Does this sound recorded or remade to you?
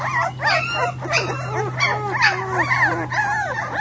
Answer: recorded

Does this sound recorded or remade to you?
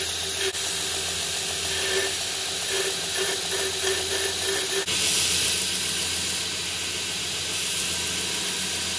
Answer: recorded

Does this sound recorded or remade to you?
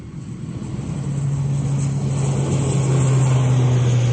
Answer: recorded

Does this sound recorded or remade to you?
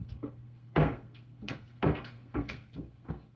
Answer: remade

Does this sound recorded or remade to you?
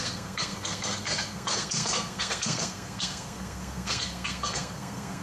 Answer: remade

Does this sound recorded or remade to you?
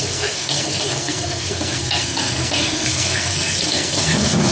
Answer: remade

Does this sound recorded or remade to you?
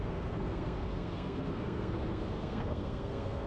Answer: remade